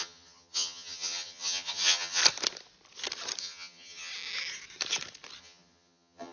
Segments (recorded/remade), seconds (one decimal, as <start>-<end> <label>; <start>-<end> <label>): 0.0-2.2 remade; 2.2-3.4 recorded; 3.4-4.1 remade; 4.1-5.4 recorded; 5.4-6.3 remade